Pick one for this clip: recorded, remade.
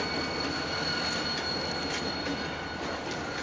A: recorded